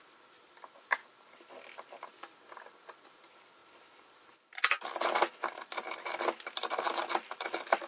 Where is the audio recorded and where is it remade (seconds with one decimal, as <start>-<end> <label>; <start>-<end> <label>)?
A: 0.0-7.9 recorded